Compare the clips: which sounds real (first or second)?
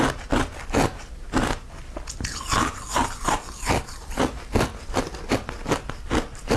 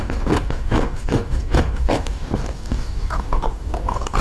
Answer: first